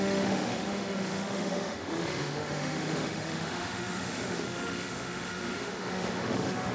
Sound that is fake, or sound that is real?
fake